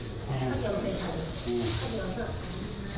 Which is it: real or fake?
real